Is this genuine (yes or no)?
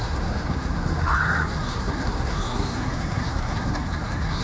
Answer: no